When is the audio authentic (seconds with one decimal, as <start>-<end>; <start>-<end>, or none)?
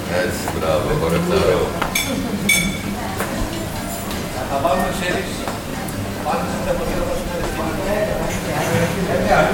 0.0-5.7